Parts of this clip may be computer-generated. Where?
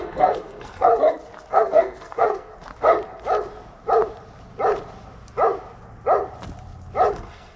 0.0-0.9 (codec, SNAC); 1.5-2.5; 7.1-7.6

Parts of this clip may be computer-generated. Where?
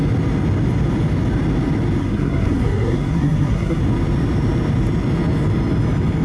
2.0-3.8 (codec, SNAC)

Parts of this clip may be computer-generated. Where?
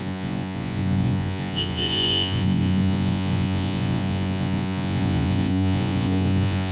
0.0-6.7 (vocoder, Vocos)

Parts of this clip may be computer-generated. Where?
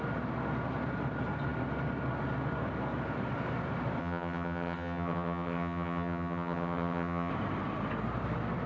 4.0-7.3 (vocoder, HiFi-GAN)